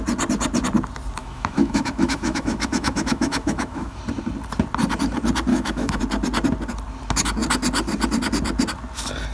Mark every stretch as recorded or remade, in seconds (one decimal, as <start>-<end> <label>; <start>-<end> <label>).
0.0-1.2 recorded; 1.2-4.0 remade; 4.0-5.5 recorded; 5.5-6.0 remade; 6.0-9.3 recorded